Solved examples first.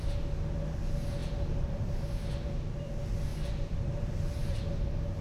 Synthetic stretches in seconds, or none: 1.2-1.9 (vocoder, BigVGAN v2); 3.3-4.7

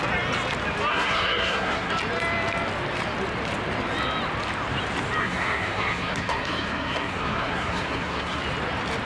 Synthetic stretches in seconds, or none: 0.9-1.9 (codec, SNAC); 5.2-8.4

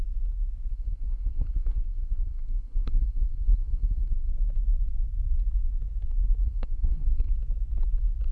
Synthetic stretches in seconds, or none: 0.7-4.3 (codec, SNAC); 6.4-7.3

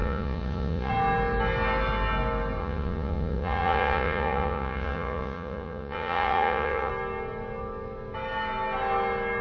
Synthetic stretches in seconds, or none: 0.0-0.9 (vocoder, Vocos); 2.6-6.9